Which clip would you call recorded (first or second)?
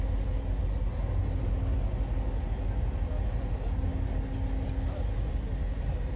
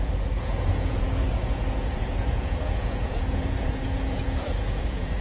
first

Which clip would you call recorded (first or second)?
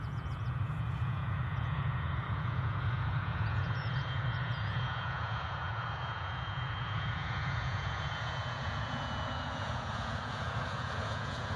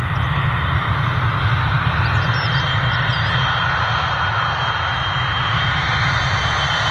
second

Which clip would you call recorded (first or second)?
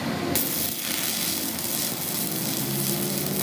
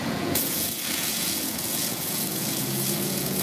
first